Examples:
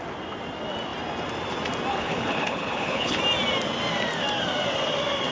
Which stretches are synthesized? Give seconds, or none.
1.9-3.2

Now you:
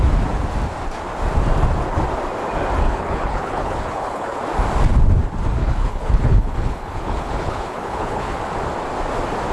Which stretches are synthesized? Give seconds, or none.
2.8-4.4; 5.6-8.4

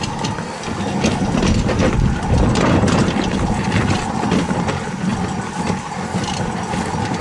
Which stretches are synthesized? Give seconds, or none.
none